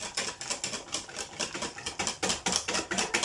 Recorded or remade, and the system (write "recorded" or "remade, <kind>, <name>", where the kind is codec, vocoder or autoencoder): recorded